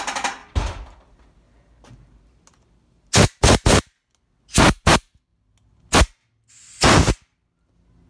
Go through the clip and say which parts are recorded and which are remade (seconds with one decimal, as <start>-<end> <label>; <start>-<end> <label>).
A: 0.0-8.1 recorded

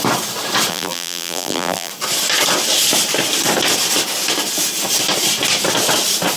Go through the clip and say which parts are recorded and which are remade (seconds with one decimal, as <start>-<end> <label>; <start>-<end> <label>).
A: 0.0-0.7 recorded; 0.7-1.9 remade; 1.9-6.4 recorded

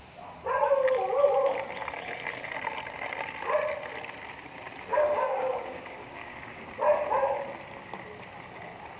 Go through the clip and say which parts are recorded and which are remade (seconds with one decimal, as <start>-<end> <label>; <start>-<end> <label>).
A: 0.0-4.9 recorded; 4.9-6.6 remade; 6.6-9.0 recorded

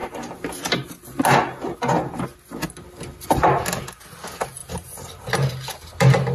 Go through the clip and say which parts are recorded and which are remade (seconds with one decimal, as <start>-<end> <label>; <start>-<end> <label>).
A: 0.0-6.3 recorded

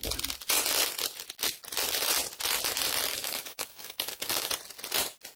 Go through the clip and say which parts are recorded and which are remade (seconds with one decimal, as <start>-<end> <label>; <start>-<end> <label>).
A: 0.0-3.1 recorded; 3.1-4.5 remade; 4.5-5.4 recorded

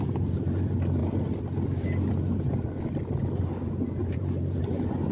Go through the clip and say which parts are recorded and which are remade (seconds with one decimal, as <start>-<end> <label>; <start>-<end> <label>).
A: 0.0-4.0 recorded; 4.0-4.6 remade; 4.6-5.1 recorded